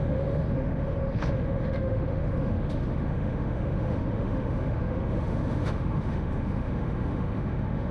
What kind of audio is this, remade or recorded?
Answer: remade